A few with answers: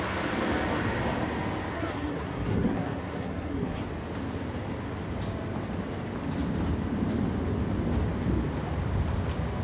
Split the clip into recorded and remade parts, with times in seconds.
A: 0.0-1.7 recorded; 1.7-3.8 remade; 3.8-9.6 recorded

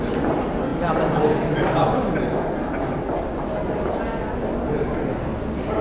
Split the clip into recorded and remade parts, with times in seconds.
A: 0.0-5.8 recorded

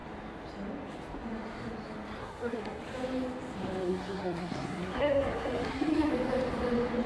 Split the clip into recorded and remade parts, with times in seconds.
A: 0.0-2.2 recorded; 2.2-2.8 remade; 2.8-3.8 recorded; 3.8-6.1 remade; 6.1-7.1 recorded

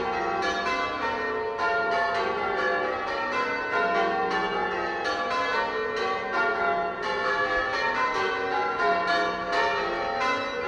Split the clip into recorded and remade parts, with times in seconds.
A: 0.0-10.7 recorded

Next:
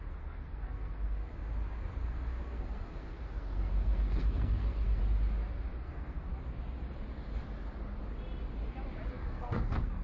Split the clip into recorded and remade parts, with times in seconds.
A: 0.0-1.4 remade; 1.4-2.0 recorded; 2.0-5.0 remade; 5.0-5.8 recorded; 5.8-6.3 remade; 6.3-9.1 recorded; 9.1-10.0 remade